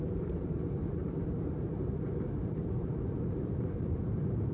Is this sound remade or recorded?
remade